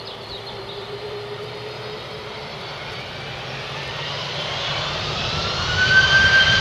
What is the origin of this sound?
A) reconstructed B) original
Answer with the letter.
A